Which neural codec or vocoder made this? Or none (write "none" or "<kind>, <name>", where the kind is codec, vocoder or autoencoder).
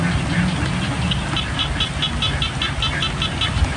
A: none